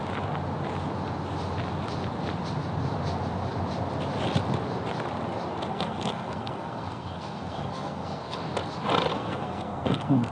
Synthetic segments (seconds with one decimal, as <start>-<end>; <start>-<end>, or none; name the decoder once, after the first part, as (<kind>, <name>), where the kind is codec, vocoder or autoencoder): 5.7-8.4 (codec, SNAC); 9.1-10.3